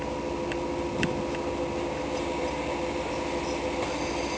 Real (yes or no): yes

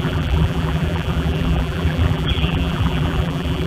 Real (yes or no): no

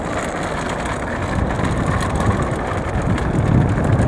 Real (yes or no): yes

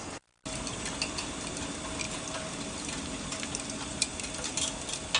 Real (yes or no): yes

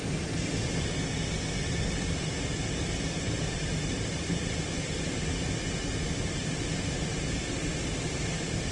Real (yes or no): yes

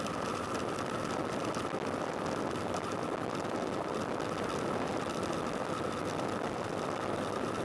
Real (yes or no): yes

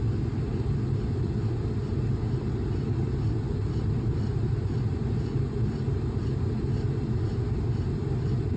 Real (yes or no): yes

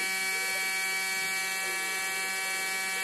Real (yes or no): yes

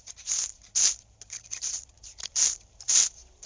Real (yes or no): no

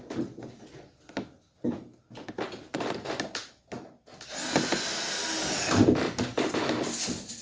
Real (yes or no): yes